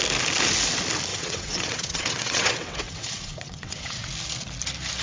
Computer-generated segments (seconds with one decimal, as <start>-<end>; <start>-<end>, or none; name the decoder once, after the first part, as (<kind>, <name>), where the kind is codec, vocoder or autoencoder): 1.1-4.1 (vocoder, WaveNeXt)